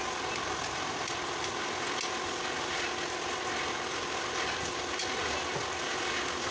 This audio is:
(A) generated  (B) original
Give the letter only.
B